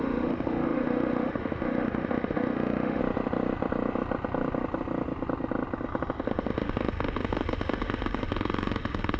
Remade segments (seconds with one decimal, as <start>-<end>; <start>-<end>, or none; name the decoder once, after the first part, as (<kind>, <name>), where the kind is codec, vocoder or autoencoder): 0.0-3.0 (autoencoder, DAC-VAE); 6.2-9.2